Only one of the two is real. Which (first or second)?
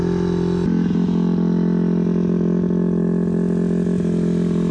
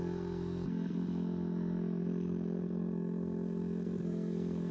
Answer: first